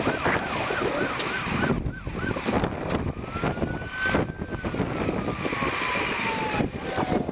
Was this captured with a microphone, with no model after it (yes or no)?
yes